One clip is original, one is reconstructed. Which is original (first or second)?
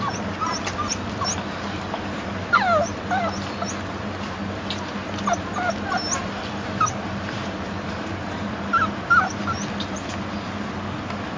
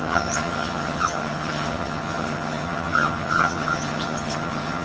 first